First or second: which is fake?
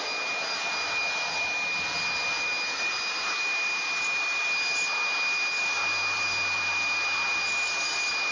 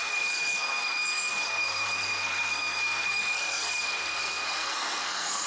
second